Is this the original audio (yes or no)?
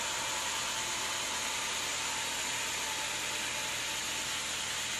yes